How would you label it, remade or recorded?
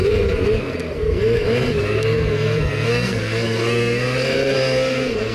remade